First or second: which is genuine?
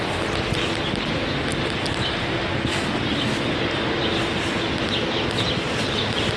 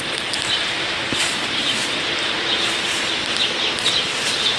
first